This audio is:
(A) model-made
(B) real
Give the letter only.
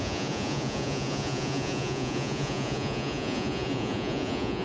A